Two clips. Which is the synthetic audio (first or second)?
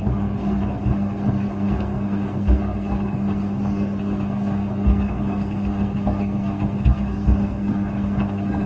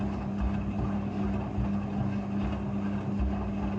first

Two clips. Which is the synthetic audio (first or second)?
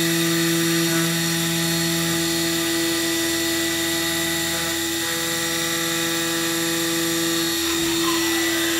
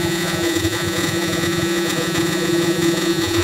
second